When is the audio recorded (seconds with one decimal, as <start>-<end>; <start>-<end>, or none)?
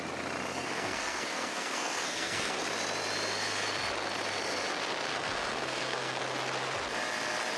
0.0-0.5; 2.6-5.1; 6.2-7.6